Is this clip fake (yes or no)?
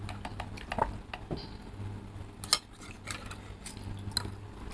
no